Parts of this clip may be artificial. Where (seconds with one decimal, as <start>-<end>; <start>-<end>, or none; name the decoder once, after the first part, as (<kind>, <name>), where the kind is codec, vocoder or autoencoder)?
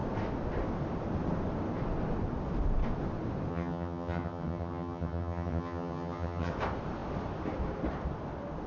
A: 3.5-6.5 (vocoder, HiFi-GAN)